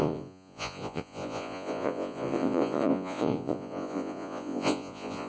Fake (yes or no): yes